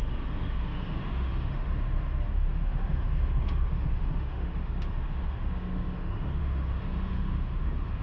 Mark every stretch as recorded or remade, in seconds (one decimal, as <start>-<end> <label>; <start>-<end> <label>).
0.0-8.0 remade